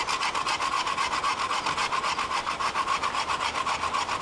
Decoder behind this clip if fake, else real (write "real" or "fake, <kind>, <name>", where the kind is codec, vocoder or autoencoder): real